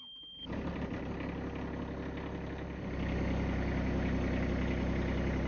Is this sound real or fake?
real